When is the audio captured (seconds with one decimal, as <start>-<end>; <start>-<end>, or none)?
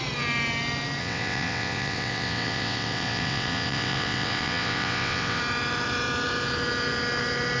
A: 0.0-1.0; 5.4-7.6